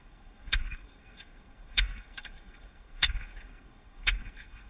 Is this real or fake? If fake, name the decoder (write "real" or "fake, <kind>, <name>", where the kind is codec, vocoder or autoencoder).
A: fake, codec, SNAC